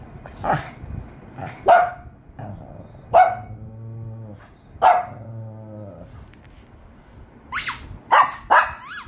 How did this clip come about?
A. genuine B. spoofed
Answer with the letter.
A